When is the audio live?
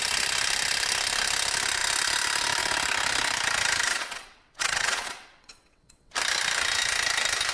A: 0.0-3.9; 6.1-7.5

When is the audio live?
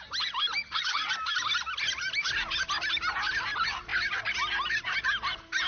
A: 0.0-0.6; 1.1-5.7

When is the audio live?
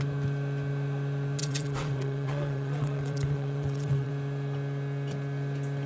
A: 0.0-1.4; 4.1-5.9